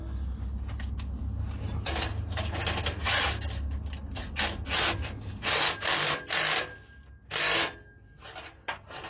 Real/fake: real